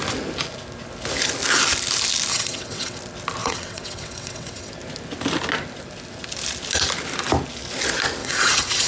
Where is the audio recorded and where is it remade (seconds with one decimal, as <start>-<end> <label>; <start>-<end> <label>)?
0.0-2.3 recorded; 2.3-3.0 remade; 3.0-3.4 recorded; 3.4-4.7 remade; 4.7-8.2 recorded; 8.2-8.9 remade